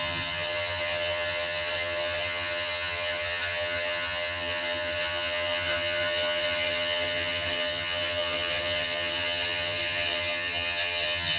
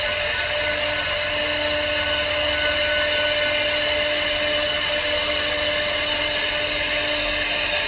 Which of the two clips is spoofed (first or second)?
first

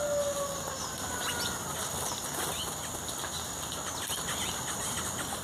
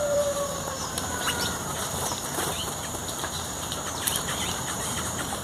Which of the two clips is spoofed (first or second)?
second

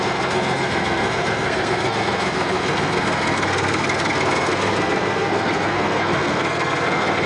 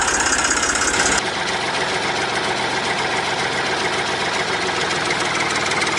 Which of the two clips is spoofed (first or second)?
first